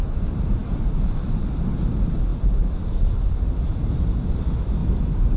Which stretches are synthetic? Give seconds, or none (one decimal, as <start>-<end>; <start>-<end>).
0.6-1.4; 2.3-3.2; 4.8-5.4